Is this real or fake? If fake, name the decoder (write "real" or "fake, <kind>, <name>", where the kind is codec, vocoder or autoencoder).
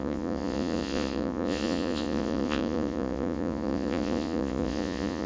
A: fake, vocoder, Vocos